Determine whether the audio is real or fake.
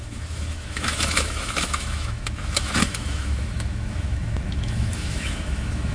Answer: fake